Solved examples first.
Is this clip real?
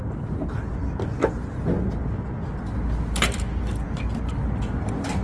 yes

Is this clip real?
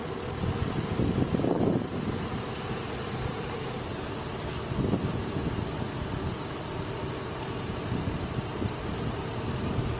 yes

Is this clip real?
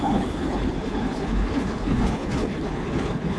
no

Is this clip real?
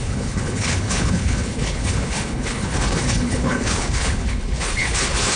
no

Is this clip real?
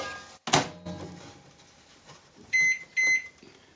yes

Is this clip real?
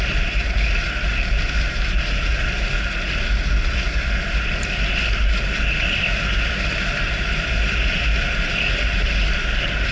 yes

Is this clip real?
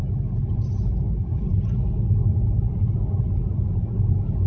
yes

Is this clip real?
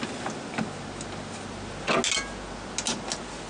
yes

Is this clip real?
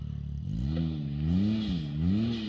yes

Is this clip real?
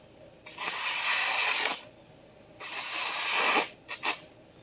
yes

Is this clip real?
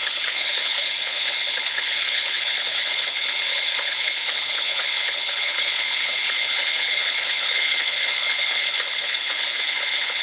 no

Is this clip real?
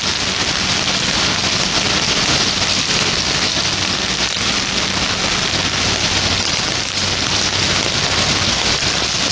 yes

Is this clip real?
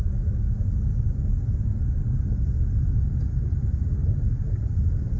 yes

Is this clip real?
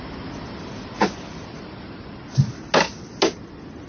yes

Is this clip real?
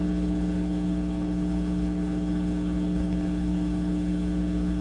no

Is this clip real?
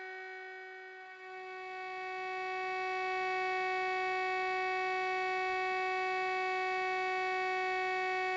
yes